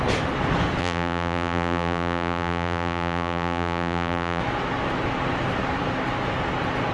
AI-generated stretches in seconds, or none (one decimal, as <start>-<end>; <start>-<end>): 0.8-4.4